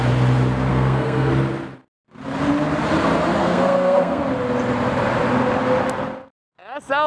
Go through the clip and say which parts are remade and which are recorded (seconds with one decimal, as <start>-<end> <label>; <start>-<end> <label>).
0.0-0.7 recorded; 0.7-1.3 remade; 1.3-3.4 recorded; 3.4-4.2 remade; 4.2-7.1 recorded